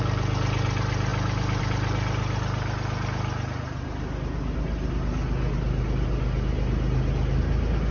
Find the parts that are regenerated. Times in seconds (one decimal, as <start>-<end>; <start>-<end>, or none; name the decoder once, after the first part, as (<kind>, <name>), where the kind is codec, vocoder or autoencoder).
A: none